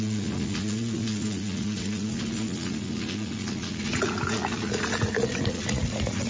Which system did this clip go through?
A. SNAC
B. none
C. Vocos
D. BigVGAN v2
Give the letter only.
C